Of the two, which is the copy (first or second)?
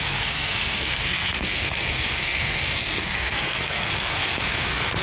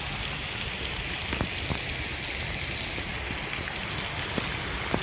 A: first